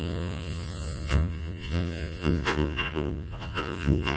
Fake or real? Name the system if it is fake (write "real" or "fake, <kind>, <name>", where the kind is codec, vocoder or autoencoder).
fake, vocoder, Vocos